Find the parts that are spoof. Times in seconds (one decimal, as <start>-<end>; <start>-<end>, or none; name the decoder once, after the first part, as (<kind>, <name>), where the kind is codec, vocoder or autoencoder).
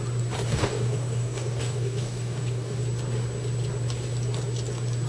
0.5-2.8 (codec, DAC)